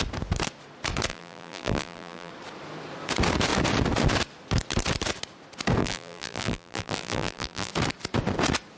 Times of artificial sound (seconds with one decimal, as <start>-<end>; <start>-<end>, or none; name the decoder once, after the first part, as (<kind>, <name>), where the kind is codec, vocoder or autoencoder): 1.1-2.3 (vocoder, BigVGAN v2); 5.8-7.7